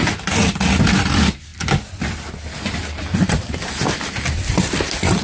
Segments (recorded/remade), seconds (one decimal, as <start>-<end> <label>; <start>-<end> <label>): 0.0-5.2 recorded